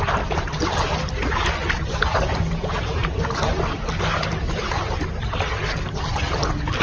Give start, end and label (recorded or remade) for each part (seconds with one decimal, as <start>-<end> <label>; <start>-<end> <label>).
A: 0.0-6.8 recorded